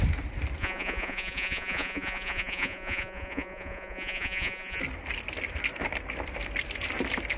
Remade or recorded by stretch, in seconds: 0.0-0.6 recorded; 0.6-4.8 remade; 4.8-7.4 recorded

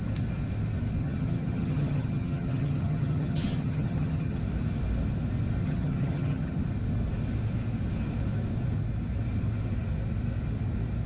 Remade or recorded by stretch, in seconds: 0.0-1.0 recorded; 1.0-4.4 remade; 4.4-5.6 recorded; 5.6-6.6 remade; 6.6-11.1 recorded

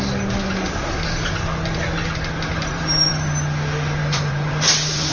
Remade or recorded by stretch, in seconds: 0.0-2.5 recorded; 2.5-3.1 remade; 3.1-4.0 recorded; 4.0-5.1 remade

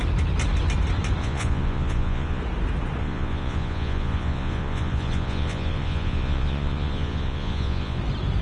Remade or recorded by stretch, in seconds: 0.0-1.2 recorded; 1.2-2.4 remade; 2.4-3.0 recorded; 3.0-8.0 remade; 8.0-8.4 recorded

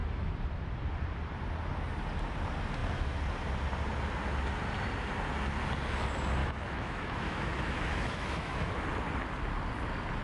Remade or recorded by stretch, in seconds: 0.0-6.4 recorded; 6.4-8.7 remade; 8.7-10.2 recorded